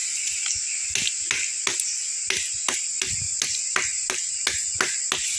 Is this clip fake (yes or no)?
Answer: no